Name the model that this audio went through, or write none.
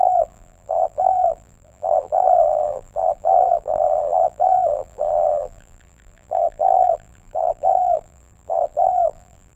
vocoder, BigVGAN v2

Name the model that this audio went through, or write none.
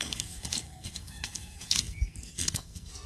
codec, SNAC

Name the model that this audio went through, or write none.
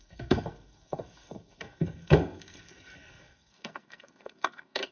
codec, SNAC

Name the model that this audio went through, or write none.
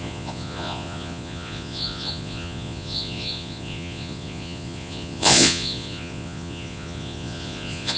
vocoder, Vocos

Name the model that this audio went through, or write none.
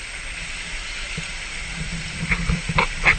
vocoder, BigVGAN v2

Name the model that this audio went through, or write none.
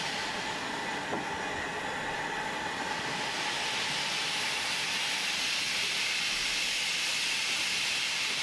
none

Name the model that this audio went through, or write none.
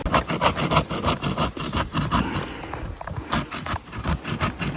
none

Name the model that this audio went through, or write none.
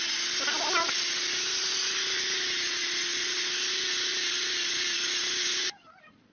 none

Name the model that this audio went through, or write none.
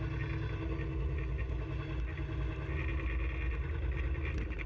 none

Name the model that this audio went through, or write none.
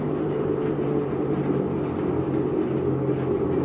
none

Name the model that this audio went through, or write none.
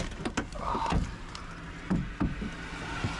none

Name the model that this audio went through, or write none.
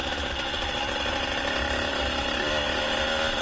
none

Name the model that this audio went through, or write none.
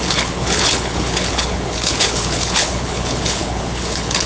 codec, HILCodec